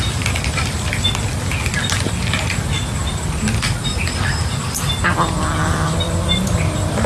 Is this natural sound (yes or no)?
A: yes